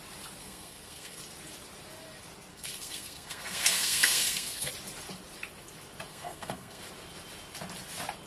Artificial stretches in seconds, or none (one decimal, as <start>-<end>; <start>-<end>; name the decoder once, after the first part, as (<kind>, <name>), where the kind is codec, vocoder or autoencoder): 0.4-1.2 (codec, SNAC); 2.5-4.7; 6.1-6.8